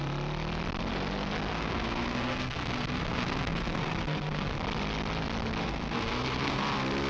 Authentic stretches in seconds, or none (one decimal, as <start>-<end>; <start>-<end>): 0.0-1.5; 4.6-5.6; 6.6-7.1